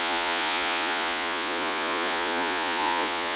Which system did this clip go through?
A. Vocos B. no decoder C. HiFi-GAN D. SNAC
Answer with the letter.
A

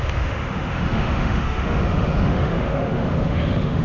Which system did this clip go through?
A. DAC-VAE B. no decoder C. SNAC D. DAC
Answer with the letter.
A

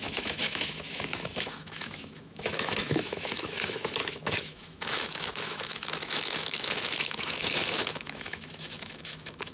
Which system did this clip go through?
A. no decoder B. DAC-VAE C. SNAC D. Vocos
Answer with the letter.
B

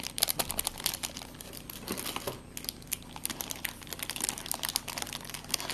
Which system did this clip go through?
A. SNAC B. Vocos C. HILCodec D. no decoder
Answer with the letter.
D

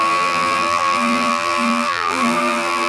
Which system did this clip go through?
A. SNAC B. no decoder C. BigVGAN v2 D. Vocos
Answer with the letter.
C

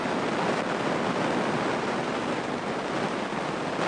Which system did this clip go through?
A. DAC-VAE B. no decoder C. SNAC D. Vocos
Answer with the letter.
B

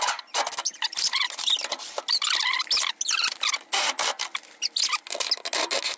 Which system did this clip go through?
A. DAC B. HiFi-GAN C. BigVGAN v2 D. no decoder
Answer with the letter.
D